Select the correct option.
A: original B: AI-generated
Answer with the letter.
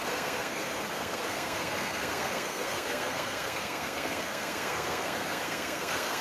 B